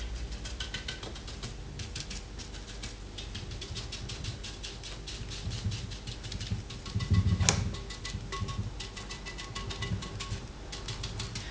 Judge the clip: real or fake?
real